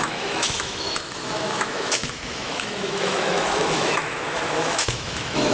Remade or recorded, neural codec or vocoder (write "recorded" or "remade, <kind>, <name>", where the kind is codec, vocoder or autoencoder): remade, autoencoder, DAC-VAE